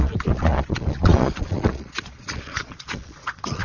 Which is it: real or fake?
fake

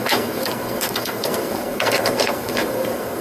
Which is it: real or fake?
fake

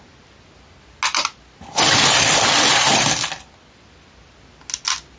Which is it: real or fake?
real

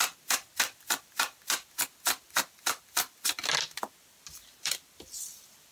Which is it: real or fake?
fake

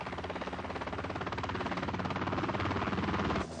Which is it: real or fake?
real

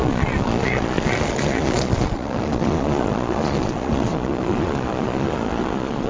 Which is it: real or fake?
fake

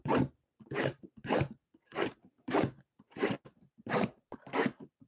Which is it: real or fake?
fake